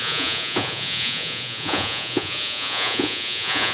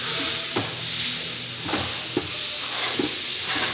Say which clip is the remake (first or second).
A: first